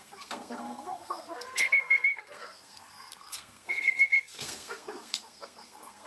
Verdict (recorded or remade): remade